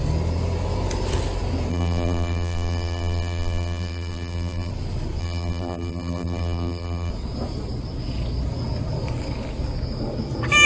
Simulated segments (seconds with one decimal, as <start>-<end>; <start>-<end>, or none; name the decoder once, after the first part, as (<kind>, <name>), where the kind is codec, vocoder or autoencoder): 1.7-4.7 (vocoder, BigVGAN v2); 5.2-7.1